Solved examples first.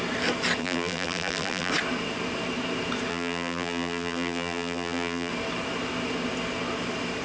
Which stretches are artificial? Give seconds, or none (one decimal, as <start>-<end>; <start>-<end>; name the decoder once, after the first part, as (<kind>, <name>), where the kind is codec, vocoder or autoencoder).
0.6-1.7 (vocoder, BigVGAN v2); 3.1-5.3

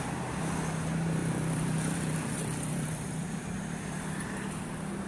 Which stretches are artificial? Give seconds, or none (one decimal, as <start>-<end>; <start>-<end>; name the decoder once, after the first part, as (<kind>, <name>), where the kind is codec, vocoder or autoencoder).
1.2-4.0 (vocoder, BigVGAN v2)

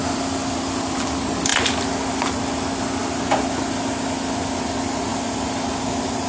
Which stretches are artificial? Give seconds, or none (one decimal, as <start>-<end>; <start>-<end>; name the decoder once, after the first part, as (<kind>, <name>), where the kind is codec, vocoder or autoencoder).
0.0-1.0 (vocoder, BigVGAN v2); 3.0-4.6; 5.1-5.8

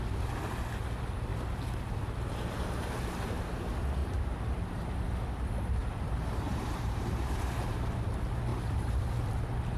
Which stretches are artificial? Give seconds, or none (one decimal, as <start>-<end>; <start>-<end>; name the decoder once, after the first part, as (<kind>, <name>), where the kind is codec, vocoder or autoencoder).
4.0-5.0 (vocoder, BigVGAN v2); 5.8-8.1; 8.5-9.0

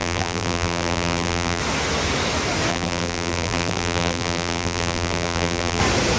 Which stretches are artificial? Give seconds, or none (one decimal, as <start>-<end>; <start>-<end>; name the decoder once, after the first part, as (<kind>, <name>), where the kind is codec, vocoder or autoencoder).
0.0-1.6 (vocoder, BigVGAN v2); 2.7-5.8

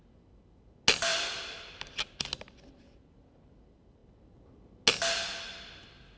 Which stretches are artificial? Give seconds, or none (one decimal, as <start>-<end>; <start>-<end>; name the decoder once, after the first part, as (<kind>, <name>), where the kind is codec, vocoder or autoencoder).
1.1-2.0 (vocoder, BigVGAN v2)

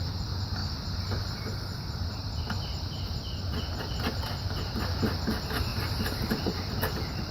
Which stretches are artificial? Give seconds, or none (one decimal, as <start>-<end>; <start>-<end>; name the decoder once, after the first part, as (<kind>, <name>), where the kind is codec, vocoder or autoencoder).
0.6-3.6 (vocoder, BigVGAN v2); 5.7-6.7

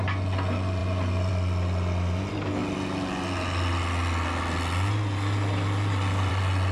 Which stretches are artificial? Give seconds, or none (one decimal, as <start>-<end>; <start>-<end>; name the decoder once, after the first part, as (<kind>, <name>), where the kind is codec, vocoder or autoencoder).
none